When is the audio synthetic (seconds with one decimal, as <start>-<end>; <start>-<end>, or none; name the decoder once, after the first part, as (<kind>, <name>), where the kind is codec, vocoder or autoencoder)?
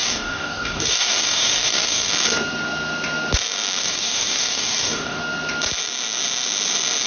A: 0.0-2.1 (codec, DAC); 3.8-5.2